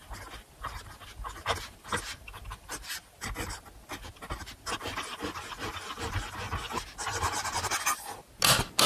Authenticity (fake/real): real